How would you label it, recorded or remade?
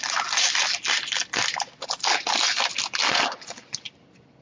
recorded